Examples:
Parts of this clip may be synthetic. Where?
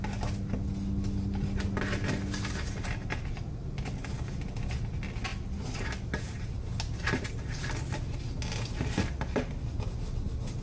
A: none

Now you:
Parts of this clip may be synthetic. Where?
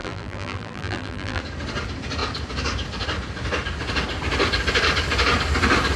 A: 0.0-1.4 (vocoder, BigVGAN v2)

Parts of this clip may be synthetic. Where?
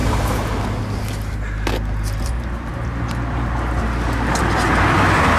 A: none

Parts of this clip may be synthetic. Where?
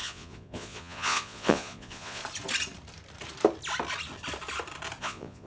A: 0.0-2.2 (vocoder, Vocos); 5.0-5.5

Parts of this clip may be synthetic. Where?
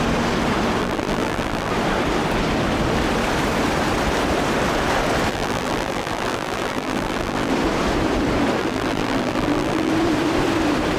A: 0.8-1.7 (vocoder, BigVGAN v2); 5.3-7.5; 8.6-9.9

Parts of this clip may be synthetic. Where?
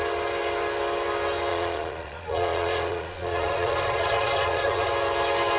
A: 1.5-4.9 (vocoder, Vocos)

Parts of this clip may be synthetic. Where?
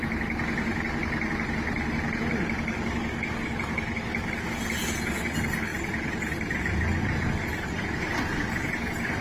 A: none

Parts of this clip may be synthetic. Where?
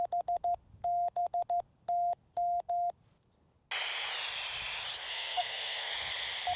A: 5.1-5.9 (codec, SNAC)